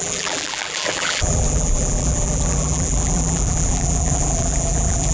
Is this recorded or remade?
remade